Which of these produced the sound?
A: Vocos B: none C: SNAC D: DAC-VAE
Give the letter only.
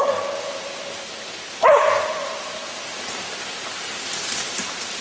B